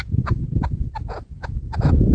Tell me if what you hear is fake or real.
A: fake